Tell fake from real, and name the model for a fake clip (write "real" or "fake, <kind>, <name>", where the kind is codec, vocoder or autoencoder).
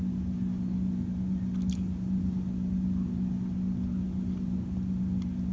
real